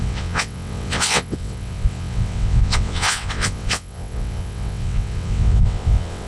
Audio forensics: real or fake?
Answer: fake